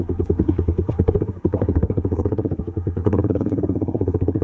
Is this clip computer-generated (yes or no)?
yes